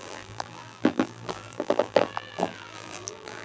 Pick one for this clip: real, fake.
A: fake